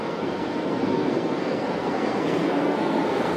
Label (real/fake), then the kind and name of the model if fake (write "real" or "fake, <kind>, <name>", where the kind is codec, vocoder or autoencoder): fake, codec, SNAC